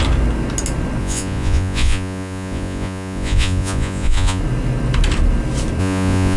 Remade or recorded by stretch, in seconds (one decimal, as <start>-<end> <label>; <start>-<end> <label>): 0.0-1.0 recorded; 1.0-4.4 remade; 4.4-5.8 recorded; 5.8-6.4 remade